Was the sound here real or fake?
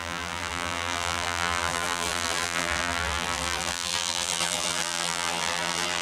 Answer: fake